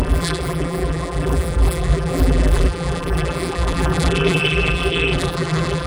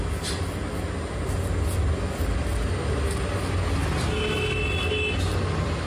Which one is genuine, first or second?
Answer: second